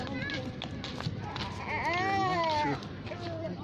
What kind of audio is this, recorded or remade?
recorded